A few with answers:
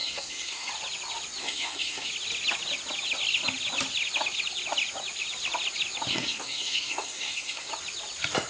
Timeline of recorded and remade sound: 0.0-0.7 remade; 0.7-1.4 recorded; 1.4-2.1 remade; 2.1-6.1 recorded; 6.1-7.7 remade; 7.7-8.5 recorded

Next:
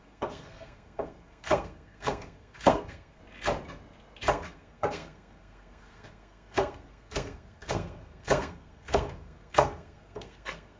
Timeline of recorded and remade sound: 0.0-3.2 remade; 3.2-4.3 recorded; 4.3-10.8 remade

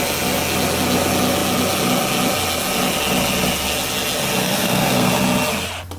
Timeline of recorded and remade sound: 0.0-4.4 recorded; 4.4-5.1 remade; 5.1-6.0 recorded

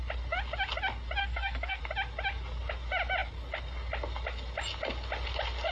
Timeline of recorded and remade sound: 0.0-1.2 recorded; 1.2-1.8 remade; 1.8-5.7 recorded

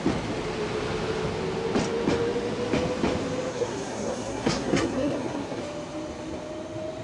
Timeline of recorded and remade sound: 0.0-3.5 recorded; 3.5-5.6 remade; 5.6-7.0 recorded

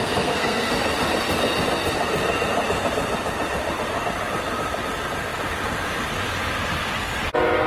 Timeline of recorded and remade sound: 0.0-0.7 remade; 0.7-7.7 recorded